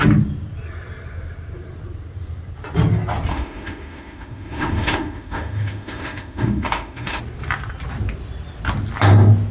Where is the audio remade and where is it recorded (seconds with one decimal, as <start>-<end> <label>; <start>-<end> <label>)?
0.0-3.3 recorded; 3.3-7.2 remade; 7.2-9.5 recorded